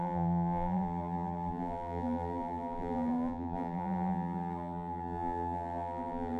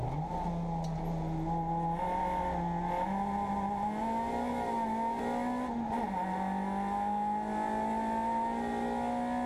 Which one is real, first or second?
second